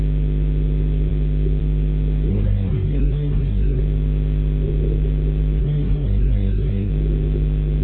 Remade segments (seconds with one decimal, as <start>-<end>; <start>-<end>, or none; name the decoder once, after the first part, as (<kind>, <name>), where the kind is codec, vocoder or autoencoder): 2.3-3.8 (codec, SNAC); 5.6-6.9